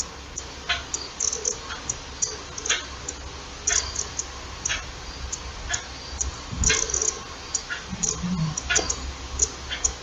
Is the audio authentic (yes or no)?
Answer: yes